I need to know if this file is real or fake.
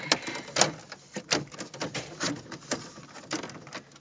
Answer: real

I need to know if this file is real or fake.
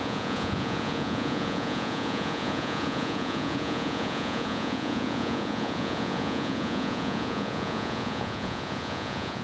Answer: fake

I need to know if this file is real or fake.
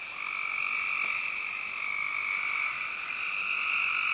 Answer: real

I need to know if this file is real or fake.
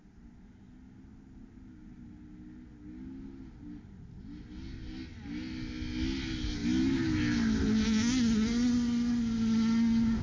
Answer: real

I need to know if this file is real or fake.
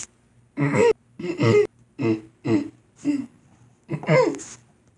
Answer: real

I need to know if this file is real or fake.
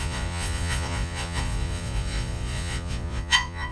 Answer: fake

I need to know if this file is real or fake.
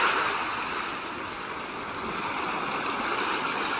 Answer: real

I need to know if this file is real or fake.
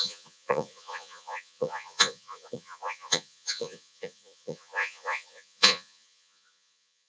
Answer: fake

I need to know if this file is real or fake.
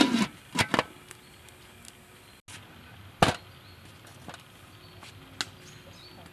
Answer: real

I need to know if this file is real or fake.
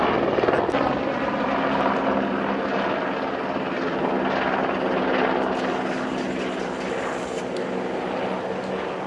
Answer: real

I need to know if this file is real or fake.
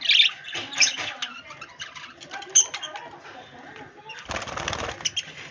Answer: real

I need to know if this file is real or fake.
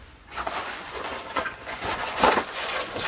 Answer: fake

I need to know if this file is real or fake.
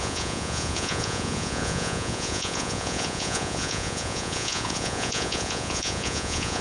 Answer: fake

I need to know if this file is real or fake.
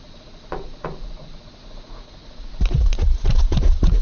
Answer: fake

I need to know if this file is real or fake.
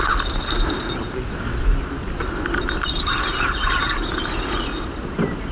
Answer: real